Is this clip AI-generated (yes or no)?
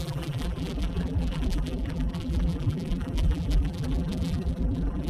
yes